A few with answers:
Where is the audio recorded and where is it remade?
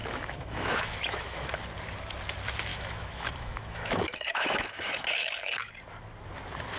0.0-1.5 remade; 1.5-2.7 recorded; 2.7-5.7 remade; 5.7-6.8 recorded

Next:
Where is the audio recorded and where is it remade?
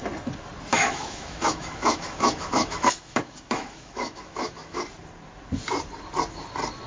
0.0-0.7 recorded; 0.7-4.8 remade; 4.8-6.9 recorded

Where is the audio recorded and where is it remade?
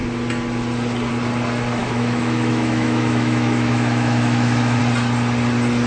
0.0-1.8 recorded; 1.8-4.8 remade; 4.8-5.9 recorded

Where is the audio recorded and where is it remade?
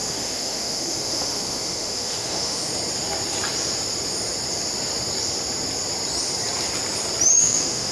0.0-2.7 remade; 2.7-7.4 recorded; 7.4-7.9 remade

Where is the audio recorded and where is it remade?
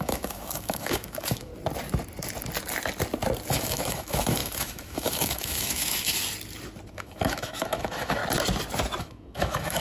0.0-1.5 remade; 1.5-3.5 recorded; 3.5-6.2 remade; 6.2-6.9 recorded; 6.9-8.2 remade; 8.2-9.0 recorded; 9.0-9.8 remade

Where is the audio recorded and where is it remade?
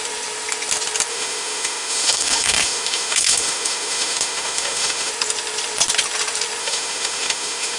0.0-1.1 recorded; 1.1-5.1 remade; 5.1-6.6 recorded; 6.6-7.8 remade